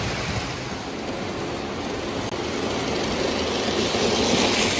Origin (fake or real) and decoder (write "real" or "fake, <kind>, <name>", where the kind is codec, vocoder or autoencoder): real